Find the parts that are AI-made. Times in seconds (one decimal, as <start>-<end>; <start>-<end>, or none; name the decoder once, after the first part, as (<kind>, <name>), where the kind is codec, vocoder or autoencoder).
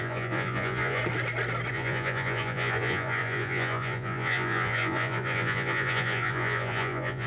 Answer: 0.0-1.0 (vocoder, Vocos); 1.7-7.3